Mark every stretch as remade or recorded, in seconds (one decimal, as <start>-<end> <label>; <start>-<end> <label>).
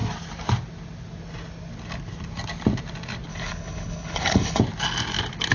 0.0-3.3 recorded; 3.3-4.6 remade; 4.6-5.5 recorded